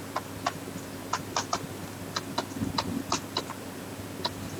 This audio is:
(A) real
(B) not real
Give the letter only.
A